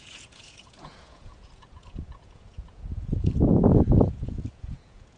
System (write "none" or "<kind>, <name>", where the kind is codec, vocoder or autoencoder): vocoder, Vocos